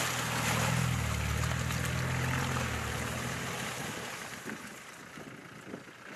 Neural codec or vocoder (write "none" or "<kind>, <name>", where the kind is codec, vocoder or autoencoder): none